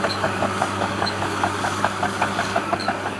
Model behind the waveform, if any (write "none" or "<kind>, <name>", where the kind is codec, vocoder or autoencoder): codec, DAC